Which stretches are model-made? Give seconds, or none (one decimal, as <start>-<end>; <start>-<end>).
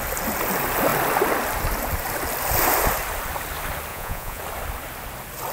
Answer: 3.9-4.4